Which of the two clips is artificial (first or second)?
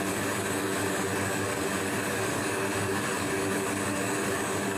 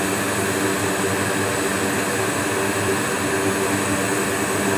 first